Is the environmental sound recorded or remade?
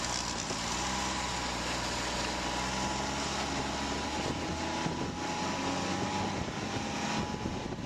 recorded